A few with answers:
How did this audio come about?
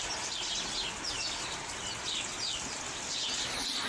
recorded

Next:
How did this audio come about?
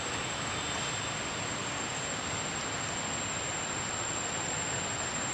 recorded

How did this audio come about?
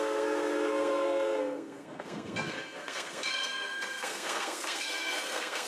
remade